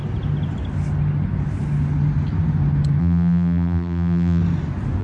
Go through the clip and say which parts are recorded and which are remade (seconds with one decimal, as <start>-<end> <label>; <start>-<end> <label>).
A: 0.0-3.0 recorded; 3.0-4.4 remade; 4.4-5.0 recorded